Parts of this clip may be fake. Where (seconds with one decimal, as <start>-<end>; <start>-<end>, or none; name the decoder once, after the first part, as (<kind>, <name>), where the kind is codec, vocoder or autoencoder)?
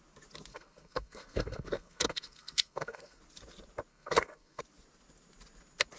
0.5-3.2 (codec, SNAC); 3.9-4.6